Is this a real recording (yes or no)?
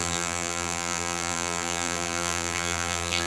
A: no